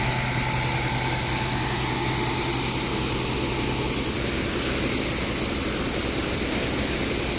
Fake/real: real